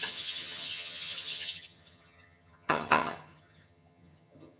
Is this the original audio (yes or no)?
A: no